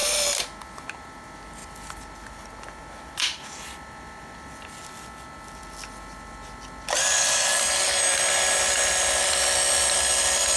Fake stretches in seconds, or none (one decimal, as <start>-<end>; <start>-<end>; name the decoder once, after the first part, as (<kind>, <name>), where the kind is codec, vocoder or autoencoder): none